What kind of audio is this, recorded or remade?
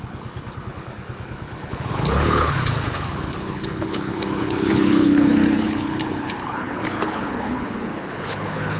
remade